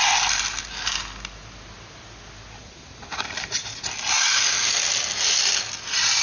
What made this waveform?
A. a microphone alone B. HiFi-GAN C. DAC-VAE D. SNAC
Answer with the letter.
A